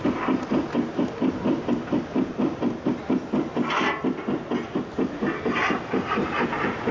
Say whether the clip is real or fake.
real